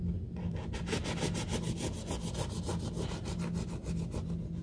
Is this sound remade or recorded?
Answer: recorded